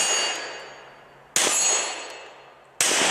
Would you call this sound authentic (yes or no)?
yes